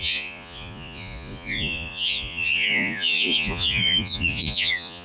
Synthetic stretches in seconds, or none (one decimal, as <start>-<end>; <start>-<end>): 0.0-5.0